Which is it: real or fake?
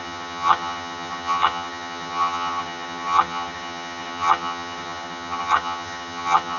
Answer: fake